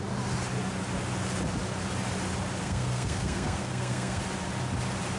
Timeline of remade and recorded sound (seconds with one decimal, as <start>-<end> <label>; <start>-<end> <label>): 0.0-2.6 recorded; 2.6-4.2 remade; 4.2-5.2 recorded